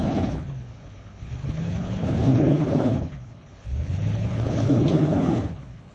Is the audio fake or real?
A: fake